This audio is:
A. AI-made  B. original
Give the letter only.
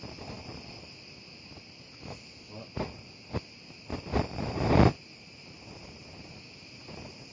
B